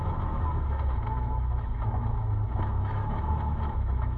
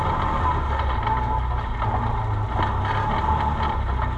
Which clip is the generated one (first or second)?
first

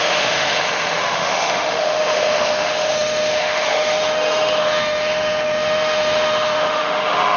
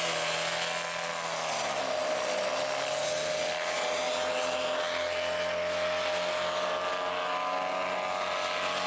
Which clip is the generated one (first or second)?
first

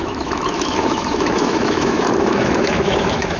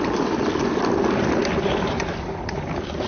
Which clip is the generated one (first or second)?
first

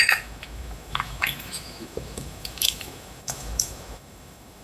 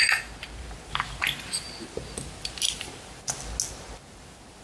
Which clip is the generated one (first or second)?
first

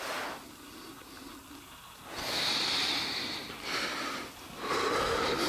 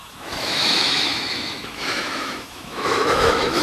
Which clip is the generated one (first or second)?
second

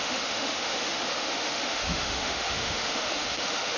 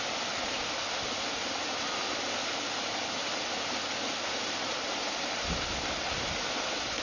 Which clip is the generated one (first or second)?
first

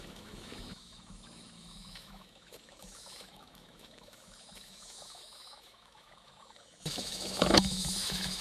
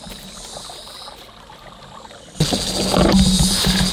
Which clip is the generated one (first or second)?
first